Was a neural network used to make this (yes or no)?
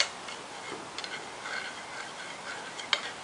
no